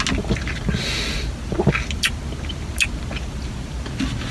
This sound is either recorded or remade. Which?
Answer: recorded